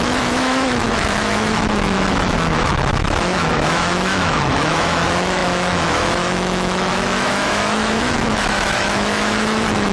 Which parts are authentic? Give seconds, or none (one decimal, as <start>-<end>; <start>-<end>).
none